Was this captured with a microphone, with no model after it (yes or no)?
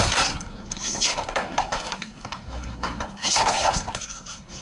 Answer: no